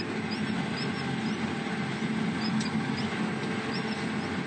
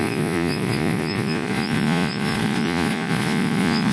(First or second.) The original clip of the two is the first